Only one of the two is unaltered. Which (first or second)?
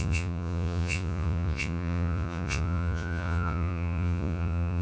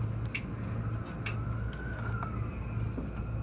second